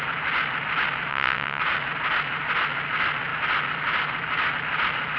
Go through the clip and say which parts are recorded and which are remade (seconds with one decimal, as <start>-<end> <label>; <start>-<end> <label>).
0.0-1.1 recorded; 1.1-1.6 remade; 1.6-5.2 recorded